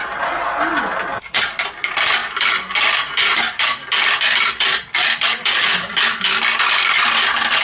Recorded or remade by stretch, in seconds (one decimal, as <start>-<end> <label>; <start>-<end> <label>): 0.0-7.6 recorded